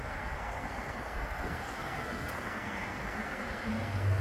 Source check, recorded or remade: remade